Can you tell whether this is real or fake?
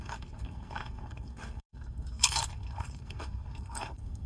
fake